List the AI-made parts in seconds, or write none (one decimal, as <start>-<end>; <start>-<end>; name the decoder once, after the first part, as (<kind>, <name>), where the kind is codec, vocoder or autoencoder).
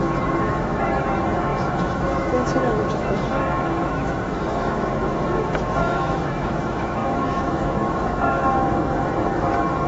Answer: 0.0-9.9 (autoencoder, DAC-VAE)